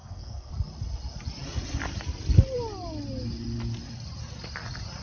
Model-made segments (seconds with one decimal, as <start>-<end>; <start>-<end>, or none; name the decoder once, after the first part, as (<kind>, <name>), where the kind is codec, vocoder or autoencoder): 0.0-0.5 (codec, SNAC)